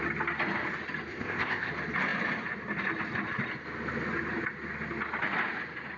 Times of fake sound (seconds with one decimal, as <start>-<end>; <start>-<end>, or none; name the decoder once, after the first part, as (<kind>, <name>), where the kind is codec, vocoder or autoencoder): 1.1-1.7 (codec, ZipCodec)